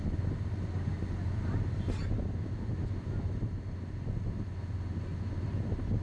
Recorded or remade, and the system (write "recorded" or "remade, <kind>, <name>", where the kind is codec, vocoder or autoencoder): recorded